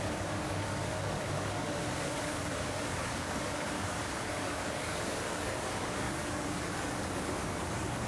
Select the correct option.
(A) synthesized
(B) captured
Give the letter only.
A